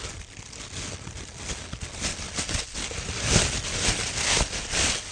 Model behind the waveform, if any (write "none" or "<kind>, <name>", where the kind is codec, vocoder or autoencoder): none